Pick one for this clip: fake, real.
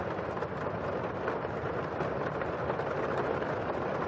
real